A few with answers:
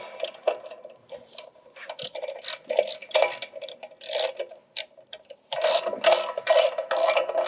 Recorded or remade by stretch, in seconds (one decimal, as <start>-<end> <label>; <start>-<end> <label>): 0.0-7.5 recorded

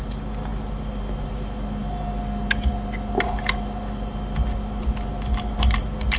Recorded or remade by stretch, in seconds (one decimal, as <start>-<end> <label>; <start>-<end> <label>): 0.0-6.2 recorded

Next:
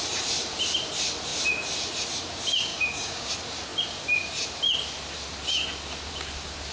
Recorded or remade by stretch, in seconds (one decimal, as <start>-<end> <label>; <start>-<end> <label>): 0.0-2.7 recorded; 2.7-3.3 remade; 3.3-6.7 recorded

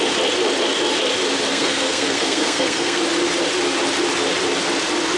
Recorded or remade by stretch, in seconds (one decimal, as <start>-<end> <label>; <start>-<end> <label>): 0.0-1.5 recorded; 1.5-3.0 remade; 3.0-5.2 recorded